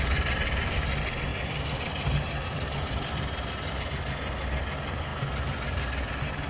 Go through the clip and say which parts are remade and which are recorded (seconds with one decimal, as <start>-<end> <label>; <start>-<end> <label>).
0.0-1.3 recorded; 1.3-3.7 remade; 3.7-6.5 recorded